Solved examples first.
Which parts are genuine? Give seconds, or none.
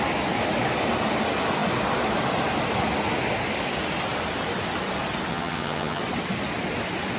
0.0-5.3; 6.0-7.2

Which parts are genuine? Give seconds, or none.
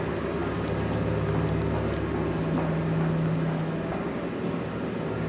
0.0-5.3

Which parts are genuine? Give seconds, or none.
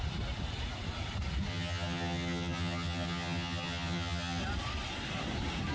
0.0-1.5; 4.4-5.7